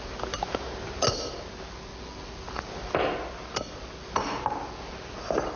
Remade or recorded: recorded